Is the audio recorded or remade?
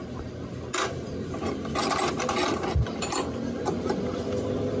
recorded